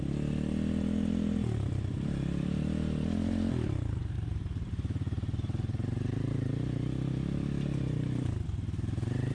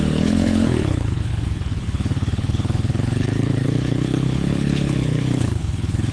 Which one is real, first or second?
first